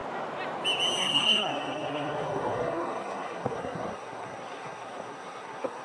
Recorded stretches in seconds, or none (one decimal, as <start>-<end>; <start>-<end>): 0.0-1.0